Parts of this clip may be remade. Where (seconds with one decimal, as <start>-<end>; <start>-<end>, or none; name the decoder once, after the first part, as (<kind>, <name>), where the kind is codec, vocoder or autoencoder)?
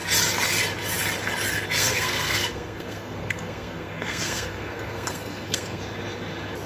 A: 1.8-5.8 (codec, SNAC)